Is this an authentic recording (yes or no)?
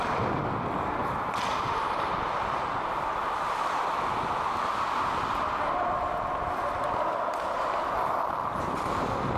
yes